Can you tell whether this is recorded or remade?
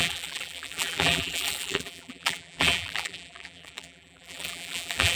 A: remade